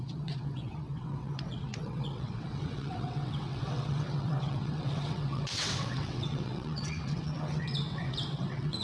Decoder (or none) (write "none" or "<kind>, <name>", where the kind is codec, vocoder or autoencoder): vocoder, WaveNeXt